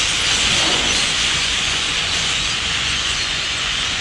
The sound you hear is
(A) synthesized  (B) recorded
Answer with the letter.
A